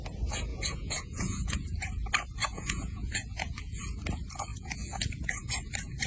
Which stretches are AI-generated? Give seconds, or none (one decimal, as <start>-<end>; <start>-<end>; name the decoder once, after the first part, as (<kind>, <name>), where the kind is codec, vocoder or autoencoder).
0.5-1.8 (vocoder, Vocos); 2.4-3.8; 4.5-5.5